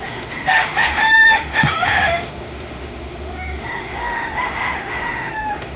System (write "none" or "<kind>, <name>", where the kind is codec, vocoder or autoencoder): autoencoder, DAC-VAE